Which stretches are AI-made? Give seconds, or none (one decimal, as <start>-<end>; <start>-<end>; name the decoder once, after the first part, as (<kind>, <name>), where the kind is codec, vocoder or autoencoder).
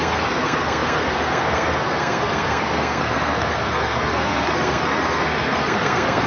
0.0-6.3 (codec, SNAC)